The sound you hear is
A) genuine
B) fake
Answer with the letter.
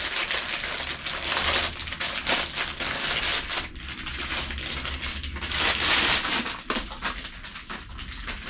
A